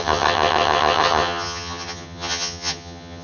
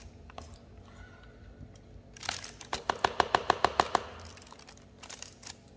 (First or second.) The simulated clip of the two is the first